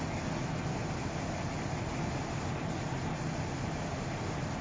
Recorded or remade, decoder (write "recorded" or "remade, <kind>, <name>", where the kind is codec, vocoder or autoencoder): recorded